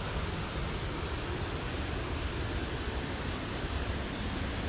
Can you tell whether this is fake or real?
real